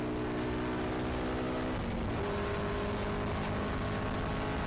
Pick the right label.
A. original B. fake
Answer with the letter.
A